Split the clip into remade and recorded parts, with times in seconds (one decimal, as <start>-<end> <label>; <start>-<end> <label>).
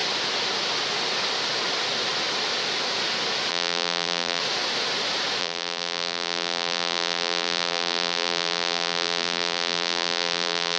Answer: 0.0-3.5 recorded; 3.5-4.4 remade; 4.4-5.4 recorded; 5.4-10.8 remade